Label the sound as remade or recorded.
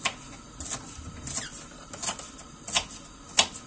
recorded